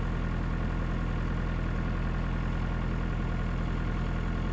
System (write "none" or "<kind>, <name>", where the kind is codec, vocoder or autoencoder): none